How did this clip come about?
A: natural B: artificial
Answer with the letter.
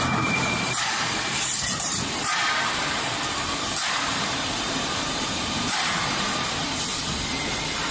B